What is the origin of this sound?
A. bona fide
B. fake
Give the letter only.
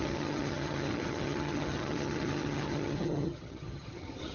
B